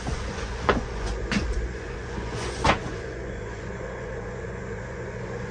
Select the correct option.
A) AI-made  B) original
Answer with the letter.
A